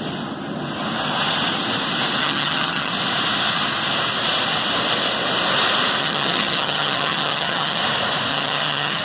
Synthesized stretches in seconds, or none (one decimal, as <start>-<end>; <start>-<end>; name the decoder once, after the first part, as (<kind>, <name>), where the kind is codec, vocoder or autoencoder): 2.2-2.9 (vocoder, HiFi-GAN); 6.0-7.8; 8.3-9.0